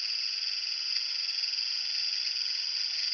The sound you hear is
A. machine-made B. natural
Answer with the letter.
B